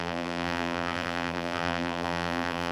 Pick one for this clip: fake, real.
fake